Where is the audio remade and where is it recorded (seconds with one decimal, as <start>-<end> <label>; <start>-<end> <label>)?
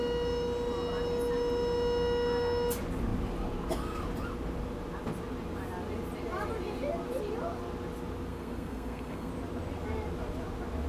0.0-8.3 recorded; 8.3-9.3 remade; 9.3-10.9 recorded